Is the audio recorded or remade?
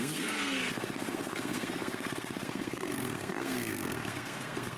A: remade